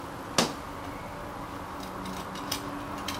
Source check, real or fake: real